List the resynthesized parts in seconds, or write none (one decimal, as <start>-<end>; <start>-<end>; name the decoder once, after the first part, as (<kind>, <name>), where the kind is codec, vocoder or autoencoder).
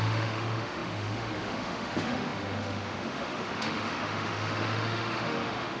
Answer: 0.0-5.8 (autoencoder, DAC-VAE)